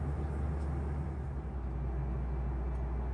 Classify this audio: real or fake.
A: real